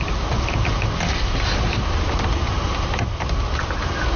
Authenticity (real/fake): real